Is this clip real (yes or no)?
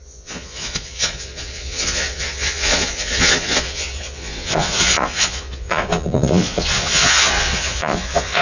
no